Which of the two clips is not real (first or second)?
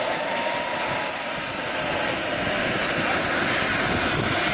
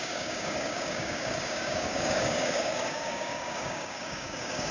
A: second